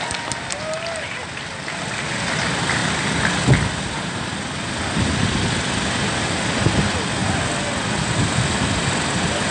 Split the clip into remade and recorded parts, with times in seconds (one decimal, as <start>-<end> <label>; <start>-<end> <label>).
0.0-2.8 recorded; 2.8-5.0 remade; 5.0-9.5 recorded